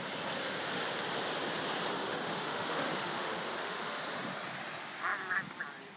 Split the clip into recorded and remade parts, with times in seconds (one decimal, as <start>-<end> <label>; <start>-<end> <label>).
0.0-2.0 recorded; 2.0-4.0 remade; 4.0-6.0 recorded